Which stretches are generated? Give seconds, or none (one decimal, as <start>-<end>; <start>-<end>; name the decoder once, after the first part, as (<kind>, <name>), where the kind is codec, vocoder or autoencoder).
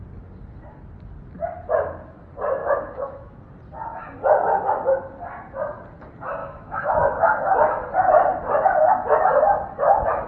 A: 2.6-3.4 (autoencoder, DAC-VAE); 6.4-7.0